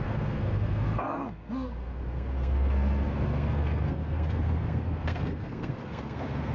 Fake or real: fake